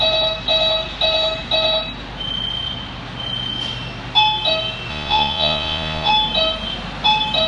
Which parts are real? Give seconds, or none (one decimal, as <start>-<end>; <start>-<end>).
0.0-4.9; 6.1-7.5